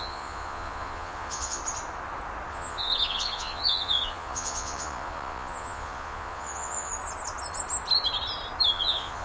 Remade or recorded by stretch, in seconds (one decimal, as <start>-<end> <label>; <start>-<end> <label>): 0.0-1.6 remade; 1.6-2.5 recorded; 2.5-6.9 remade; 6.9-8.7 recorded; 8.7-9.2 remade